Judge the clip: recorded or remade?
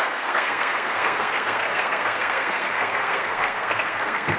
remade